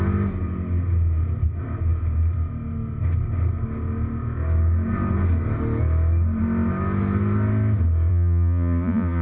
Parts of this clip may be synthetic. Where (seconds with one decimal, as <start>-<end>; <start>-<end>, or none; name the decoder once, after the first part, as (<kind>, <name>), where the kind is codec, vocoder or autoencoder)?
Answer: 8.1-9.2 (vocoder, Vocos)